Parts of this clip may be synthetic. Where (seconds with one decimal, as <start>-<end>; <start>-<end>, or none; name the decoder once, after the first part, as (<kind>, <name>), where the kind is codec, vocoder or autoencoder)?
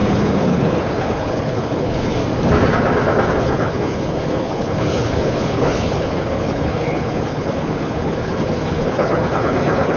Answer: 0.0-2.2 (codec, HILCodec); 3.3-10.0